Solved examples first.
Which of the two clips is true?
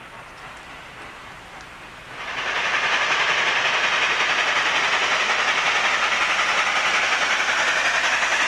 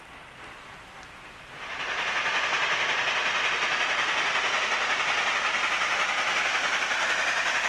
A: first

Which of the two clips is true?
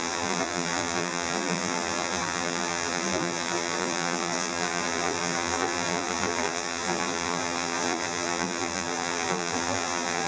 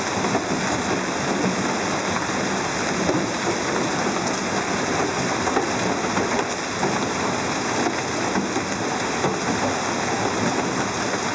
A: second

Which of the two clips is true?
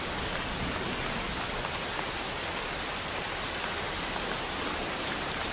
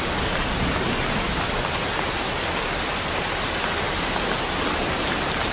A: second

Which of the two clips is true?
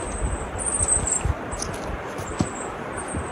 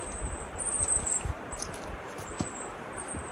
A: first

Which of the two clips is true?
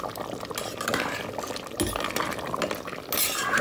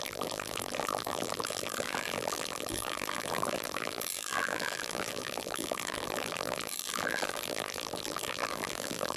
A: first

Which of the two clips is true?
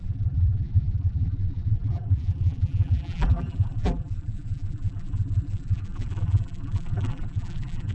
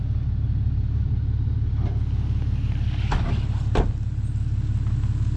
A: second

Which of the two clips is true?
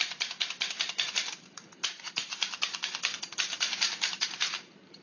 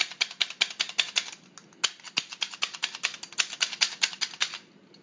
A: second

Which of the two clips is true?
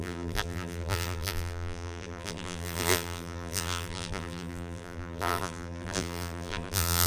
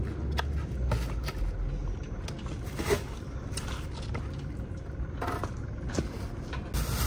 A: second